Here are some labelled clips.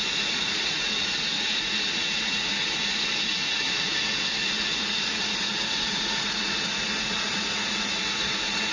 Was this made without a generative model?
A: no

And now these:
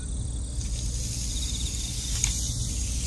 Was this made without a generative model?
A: yes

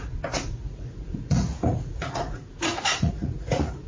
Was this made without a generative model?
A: no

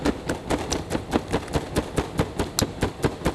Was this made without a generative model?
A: yes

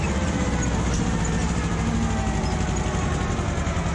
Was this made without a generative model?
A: yes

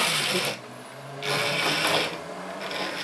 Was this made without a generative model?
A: yes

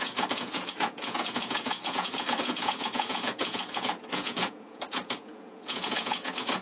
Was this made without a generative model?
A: no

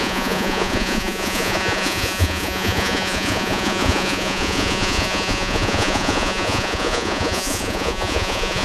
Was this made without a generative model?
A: no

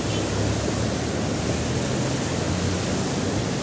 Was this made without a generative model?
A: yes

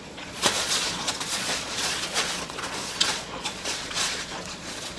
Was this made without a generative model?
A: no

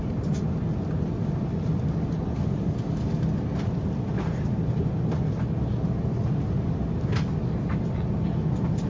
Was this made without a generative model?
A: yes